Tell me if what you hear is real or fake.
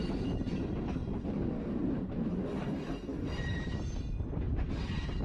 fake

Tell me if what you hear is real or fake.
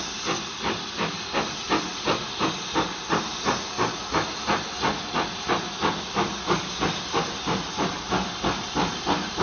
real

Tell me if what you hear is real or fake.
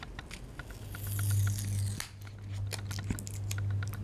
real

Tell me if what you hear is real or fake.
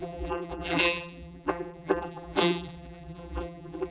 fake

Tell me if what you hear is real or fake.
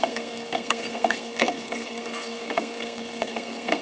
fake